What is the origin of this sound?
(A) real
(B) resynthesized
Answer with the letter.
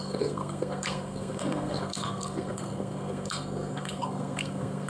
B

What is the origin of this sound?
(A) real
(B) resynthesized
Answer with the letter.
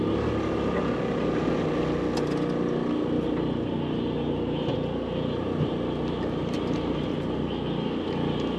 A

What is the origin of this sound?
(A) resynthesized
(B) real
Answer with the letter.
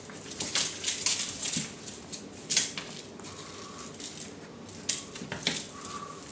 B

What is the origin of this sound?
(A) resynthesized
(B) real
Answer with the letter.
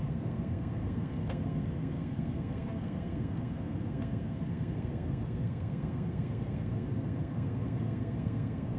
A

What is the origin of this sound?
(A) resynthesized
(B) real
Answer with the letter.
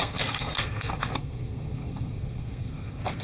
A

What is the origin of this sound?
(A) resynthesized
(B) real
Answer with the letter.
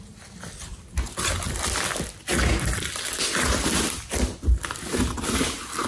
B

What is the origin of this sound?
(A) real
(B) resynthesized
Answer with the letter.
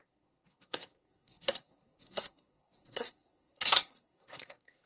B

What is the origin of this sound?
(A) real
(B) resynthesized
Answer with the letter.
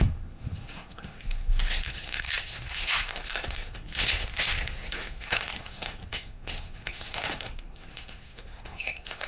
B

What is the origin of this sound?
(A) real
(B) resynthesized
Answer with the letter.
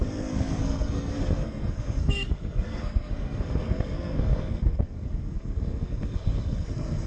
B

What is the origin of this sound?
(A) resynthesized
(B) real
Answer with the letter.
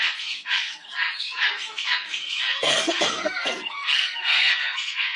A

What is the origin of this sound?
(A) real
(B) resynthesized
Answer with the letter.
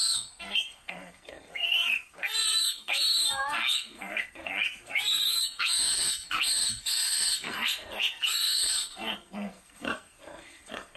B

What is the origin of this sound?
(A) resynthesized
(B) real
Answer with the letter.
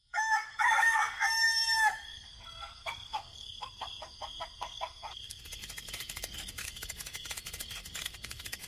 A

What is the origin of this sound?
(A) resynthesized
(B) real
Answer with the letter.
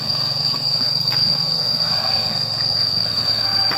A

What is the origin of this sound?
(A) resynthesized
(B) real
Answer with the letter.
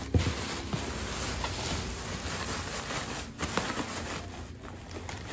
B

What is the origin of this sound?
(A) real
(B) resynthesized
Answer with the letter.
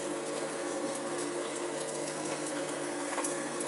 B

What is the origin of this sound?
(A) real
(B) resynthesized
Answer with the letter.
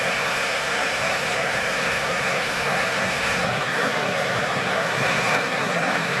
B